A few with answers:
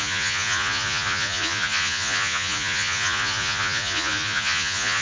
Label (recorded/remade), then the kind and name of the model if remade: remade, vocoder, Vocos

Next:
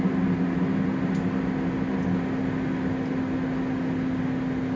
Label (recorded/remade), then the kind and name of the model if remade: recorded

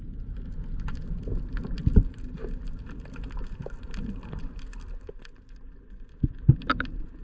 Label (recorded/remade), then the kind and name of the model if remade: recorded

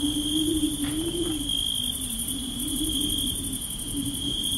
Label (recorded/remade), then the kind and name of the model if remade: recorded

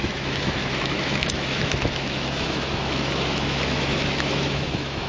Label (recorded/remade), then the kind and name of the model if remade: remade, autoencoder, DAC-VAE